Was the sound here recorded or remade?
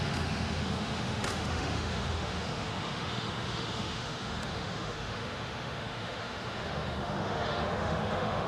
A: remade